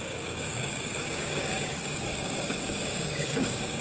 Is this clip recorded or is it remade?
remade